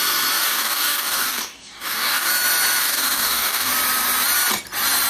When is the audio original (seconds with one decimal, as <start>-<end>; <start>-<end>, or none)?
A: 0.0-0.4; 2.3-2.8; 3.7-5.1